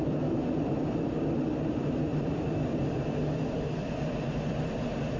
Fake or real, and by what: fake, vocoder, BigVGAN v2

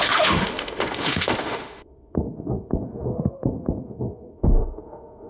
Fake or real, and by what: fake, autoencoder, DAC-VAE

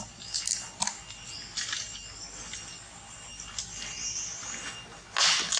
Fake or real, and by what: real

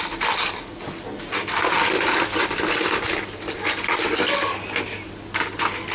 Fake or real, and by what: real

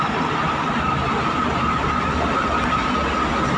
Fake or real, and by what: real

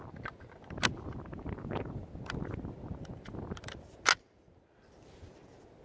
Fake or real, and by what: real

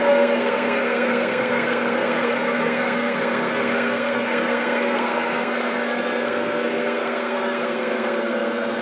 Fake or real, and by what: fake, codec, SNAC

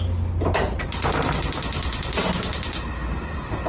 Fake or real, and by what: real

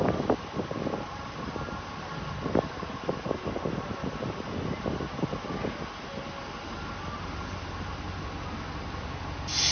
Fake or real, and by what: real